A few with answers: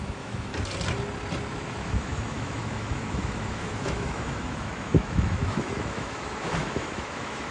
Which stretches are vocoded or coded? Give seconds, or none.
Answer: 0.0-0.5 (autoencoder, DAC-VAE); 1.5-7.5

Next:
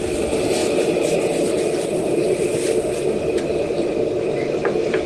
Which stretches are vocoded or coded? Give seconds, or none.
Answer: none

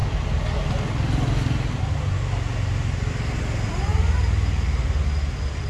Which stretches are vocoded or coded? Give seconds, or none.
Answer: none

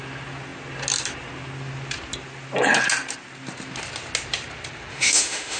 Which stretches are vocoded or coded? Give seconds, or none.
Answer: 4.9-5.6 (autoencoder, DAC-VAE)

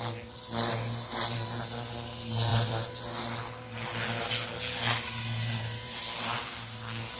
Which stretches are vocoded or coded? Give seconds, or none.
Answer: none

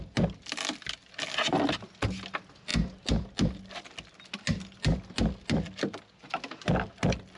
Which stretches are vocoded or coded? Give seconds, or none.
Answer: none